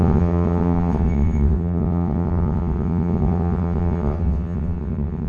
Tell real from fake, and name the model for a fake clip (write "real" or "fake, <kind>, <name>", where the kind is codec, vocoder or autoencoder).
fake, vocoder, WaveNeXt